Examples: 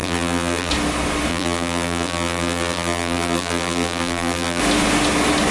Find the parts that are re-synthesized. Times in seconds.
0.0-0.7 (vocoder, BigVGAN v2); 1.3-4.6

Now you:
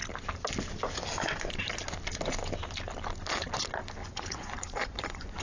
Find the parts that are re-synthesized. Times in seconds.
4.0-5.4 (vocoder, Vocos)

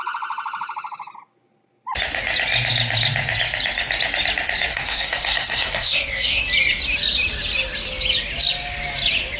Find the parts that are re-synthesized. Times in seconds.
4.7-6.4 (codec, SNAC)